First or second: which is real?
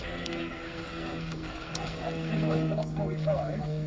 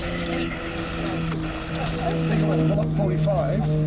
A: second